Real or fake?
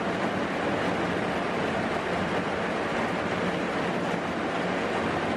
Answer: real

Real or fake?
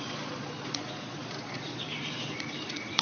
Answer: fake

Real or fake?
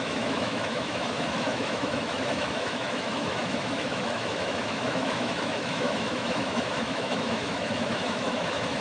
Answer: fake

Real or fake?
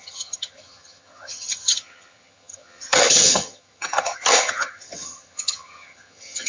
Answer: fake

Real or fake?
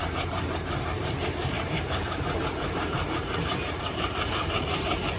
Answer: fake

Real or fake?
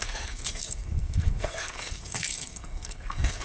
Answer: fake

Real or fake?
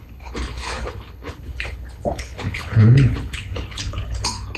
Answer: fake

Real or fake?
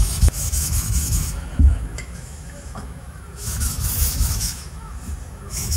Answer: fake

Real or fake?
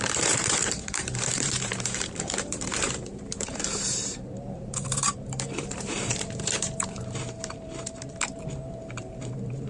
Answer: fake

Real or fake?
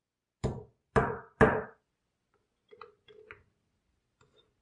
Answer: real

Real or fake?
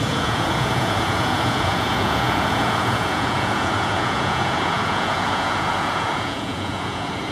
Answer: fake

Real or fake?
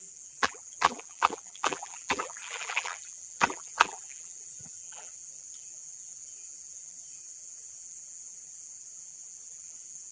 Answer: fake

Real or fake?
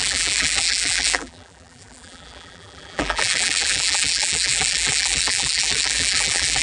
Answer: fake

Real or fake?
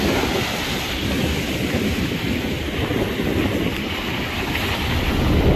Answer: real